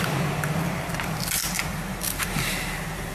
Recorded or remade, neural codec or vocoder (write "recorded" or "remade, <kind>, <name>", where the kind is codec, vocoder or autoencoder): remade, vocoder, BigVGAN v2